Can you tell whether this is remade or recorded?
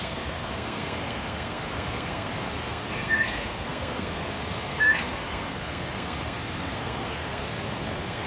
remade